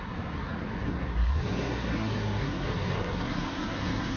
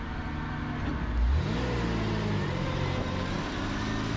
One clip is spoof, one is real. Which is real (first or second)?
second